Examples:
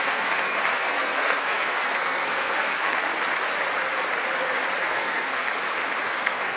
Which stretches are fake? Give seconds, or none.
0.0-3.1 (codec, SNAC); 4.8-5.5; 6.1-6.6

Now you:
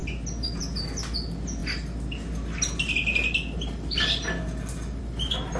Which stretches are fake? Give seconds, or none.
none

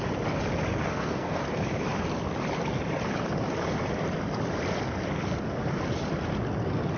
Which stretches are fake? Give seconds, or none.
0.8-1.4 (codec, SNAC)

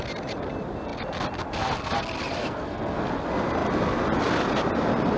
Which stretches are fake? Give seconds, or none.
2.4-3.0 (codec, SNAC)

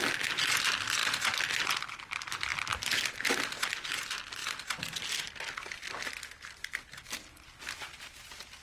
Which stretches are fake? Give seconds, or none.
none